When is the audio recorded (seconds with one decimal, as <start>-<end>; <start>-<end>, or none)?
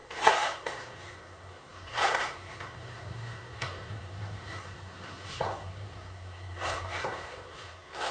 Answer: none